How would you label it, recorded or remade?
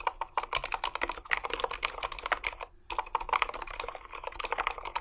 recorded